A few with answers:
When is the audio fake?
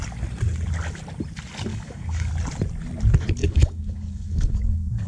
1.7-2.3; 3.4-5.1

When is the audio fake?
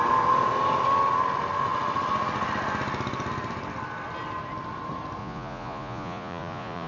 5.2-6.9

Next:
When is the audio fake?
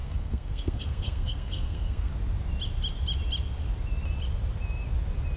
0.0-2.1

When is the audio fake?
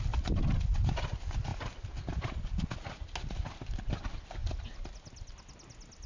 none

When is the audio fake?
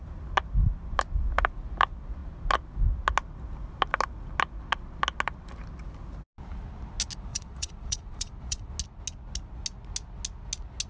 7.3-8.7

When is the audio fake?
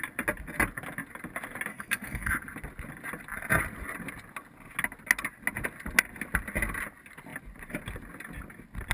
1.7-2.3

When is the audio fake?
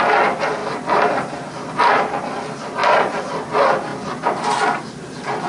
0.6-2.3; 2.8-3.3